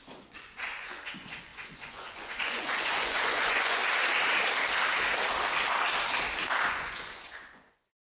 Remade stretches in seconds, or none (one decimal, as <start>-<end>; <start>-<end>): 0.0-3.8; 6.7-8.1